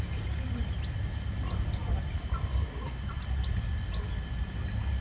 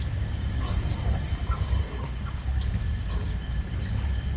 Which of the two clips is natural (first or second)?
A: first